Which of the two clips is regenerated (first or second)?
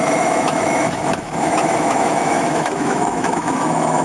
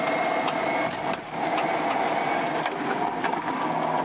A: first